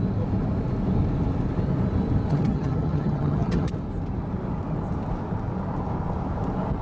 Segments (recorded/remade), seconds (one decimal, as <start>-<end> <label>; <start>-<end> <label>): 0.0-2.3 recorded; 2.3-3.7 remade; 3.7-6.8 recorded